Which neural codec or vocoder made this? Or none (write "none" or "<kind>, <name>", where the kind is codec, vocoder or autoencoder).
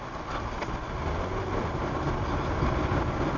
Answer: none